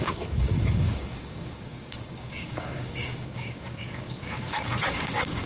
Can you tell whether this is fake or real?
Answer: fake